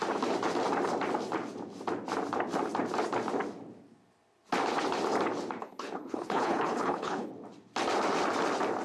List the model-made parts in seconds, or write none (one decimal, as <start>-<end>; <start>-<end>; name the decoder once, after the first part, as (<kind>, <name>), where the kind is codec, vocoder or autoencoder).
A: 5.6-7.3 (codec, HILCodec)